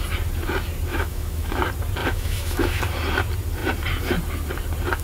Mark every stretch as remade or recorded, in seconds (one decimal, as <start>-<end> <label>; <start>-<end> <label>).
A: 0.0-0.9 recorded; 0.9-1.6 remade; 1.6-2.0 recorded; 2.0-2.8 remade; 2.8-5.0 recorded